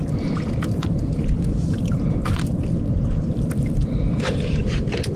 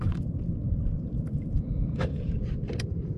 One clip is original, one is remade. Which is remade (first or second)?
second